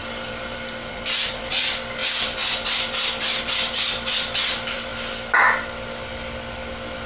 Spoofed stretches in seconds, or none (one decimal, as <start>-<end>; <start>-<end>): 0.0-4.9